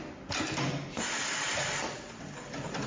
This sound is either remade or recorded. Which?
recorded